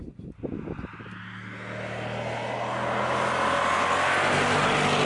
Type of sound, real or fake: real